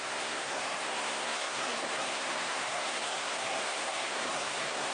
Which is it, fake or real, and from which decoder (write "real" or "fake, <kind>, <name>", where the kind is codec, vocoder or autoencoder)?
fake, codec, SNAC